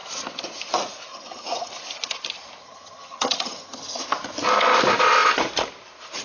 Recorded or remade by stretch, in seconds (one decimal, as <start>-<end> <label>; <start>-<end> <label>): 0.0-1.1 recorded; 1.1-1.7 remade; 1.7-2.6 recorded; 2.6-4.0 remade; 4.0-6.2 recorded

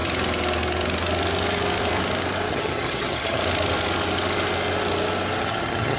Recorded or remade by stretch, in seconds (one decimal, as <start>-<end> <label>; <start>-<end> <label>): 0.0-2.5 recorded; 2.5-3.4 remade; 3.4-5.4 recorded; 5.4-6.0 remade

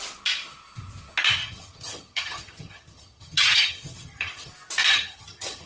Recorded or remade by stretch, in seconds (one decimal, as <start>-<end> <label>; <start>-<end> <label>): 0.0-1.4 recorded; 1.4-4.5 remade; 4.5-4.9 recorded; 4.9-5.7 remade